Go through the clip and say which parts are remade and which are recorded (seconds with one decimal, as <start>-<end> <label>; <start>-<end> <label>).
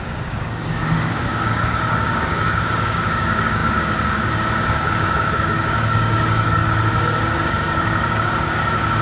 0.0-9.0 remade